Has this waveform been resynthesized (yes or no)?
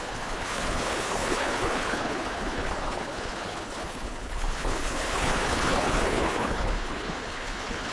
yes